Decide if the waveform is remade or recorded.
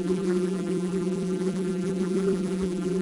remade